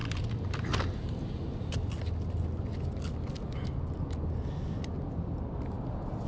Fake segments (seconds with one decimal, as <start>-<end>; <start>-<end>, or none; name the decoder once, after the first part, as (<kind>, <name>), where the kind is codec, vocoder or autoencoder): none